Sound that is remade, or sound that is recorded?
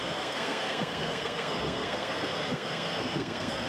remade